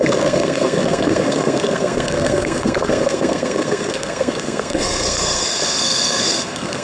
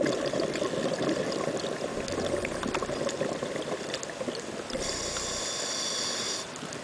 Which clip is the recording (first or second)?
second